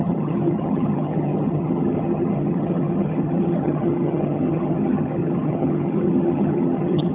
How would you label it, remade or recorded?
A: remade